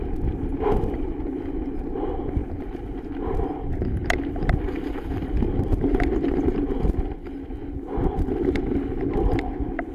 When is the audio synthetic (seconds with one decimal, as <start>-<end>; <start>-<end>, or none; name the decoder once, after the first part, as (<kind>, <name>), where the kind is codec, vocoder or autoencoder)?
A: 0.5-1.1 (vocoder, BigVGAN v2); 2.4-6.0